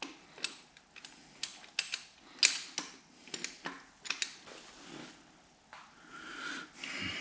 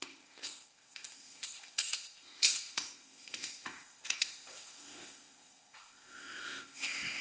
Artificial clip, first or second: second